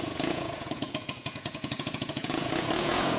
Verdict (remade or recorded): remade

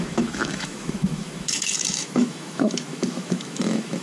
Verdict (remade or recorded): remade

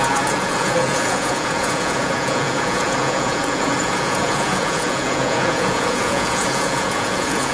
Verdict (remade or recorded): remade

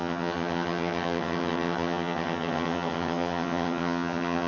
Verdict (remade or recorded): remade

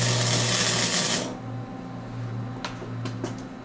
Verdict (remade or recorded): recorded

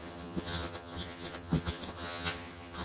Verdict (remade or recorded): remade